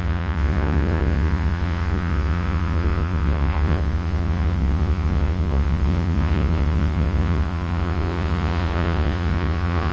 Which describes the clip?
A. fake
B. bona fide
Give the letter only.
A